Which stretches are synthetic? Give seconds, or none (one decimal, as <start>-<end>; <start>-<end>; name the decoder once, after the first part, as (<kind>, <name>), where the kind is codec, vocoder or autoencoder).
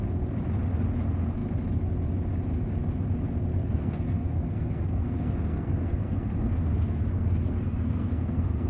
3.5-8.7 (codec, SNAC)